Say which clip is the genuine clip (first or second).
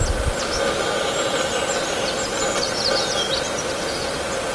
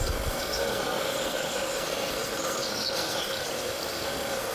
first